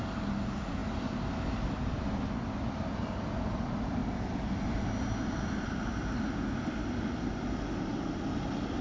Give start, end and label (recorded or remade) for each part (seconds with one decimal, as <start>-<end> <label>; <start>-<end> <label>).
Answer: 0.0-8.8 recorded